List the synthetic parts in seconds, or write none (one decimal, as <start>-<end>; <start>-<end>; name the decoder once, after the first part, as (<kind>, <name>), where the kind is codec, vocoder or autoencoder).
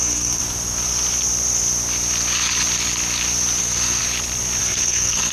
0.0-0.4 (codec, SNAC); 3.6-4.0; 4.6-5.3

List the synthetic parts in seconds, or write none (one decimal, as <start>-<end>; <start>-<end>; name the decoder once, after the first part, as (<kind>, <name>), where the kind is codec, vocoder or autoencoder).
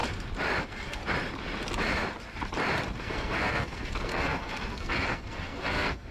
0.6-1.0 (codec, SNAC); 3.0-6.1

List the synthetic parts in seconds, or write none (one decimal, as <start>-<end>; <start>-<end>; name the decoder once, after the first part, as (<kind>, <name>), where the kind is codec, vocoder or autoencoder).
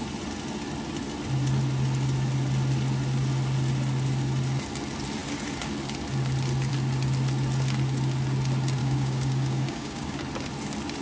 8.8-10.2 (codec, DAC)